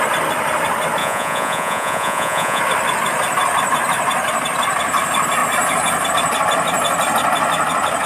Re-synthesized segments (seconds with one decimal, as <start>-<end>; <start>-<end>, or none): 1.0-2.6